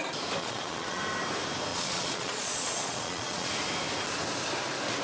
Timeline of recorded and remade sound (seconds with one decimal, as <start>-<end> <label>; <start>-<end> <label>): 0.0-0.4 recorded; 0.4-1.0 remade; 1.0-1.7 recorded; 1.7-3.5 remade; 3.5-5.0 recorded